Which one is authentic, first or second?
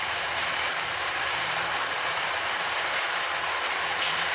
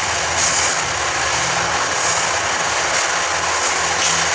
second